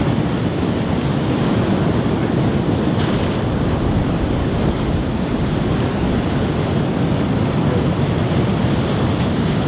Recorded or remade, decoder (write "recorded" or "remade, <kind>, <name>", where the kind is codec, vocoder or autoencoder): recorded